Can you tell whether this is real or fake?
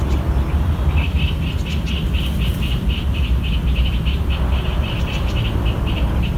real